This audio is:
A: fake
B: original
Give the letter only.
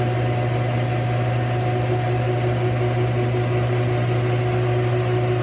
B